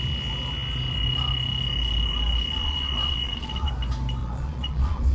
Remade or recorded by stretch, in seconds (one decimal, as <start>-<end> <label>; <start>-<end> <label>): 0.0-2.6 recorded; 2.6-3.7 remade; 3.7-4.2 recorded; 4.2-5.1 remade